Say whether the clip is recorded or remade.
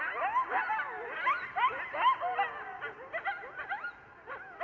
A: recorded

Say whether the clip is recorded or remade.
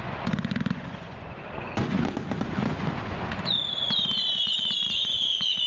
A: remade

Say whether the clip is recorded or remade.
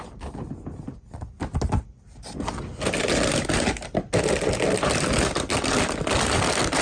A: recorded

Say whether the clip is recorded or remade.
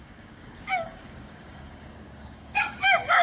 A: remade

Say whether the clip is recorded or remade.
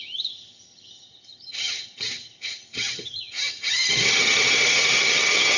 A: remade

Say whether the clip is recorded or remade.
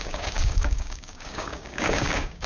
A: remade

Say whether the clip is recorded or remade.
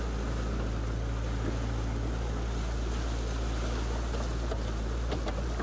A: recorded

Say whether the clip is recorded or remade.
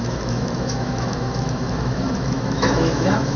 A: remade